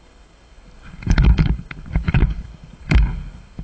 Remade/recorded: remade